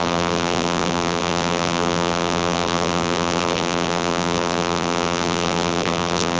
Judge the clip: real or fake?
fake